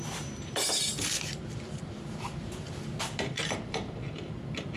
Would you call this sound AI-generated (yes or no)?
yes